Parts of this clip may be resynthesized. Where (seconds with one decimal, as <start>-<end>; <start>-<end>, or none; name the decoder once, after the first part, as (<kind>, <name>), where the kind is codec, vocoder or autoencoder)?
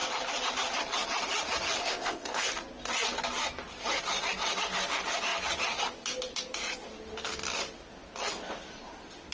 1.8-2.5 (codec, ZipCodec)